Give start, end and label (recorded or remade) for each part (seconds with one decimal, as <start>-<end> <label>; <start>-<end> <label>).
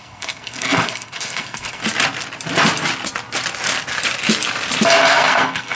0.0-1.8 remade; 1.8-5.1 recorded; 5.1-5.7 remade